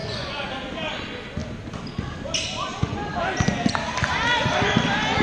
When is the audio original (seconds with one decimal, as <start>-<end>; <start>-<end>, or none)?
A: 0.5-2.7; 3.2-5.2